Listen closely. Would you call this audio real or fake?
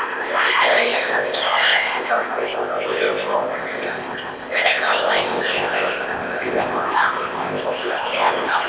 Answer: fake